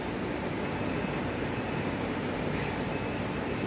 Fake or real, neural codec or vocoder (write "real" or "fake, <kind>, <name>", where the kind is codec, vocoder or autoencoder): real